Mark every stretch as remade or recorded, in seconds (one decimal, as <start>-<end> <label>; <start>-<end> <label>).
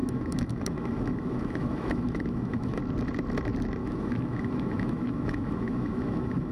0.0-2.8 remade; 2.8-3.8 recorded; 3.8-6.5 remade